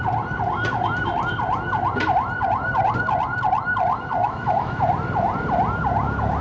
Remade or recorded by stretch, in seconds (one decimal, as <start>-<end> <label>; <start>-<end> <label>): 0.0-4.2 recorded; 4.2-4.8 remade; 4.8-6.4 recorded